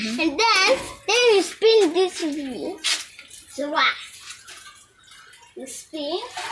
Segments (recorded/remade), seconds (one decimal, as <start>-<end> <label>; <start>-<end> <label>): 0.0-3.6 recorded; 3.6-5.0 remade; 5.0-6.5 recorded